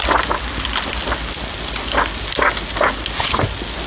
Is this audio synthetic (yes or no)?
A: no